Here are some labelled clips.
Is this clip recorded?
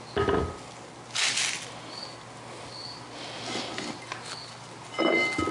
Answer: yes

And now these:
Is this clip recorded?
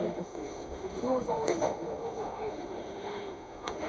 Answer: no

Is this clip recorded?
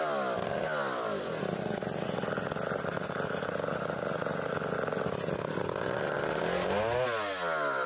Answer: yes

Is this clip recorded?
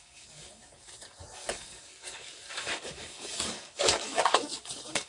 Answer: no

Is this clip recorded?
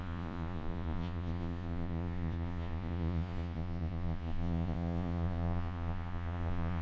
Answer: no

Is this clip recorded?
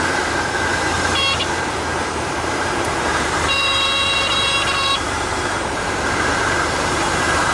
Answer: no